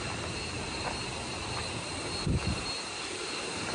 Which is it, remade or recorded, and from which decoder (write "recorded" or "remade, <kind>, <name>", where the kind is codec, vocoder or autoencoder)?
recorded